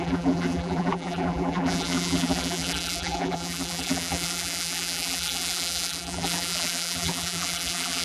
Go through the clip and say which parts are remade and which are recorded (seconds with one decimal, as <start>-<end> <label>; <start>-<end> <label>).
0.0-8.0 remade